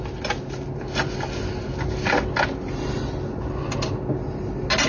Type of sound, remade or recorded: recorded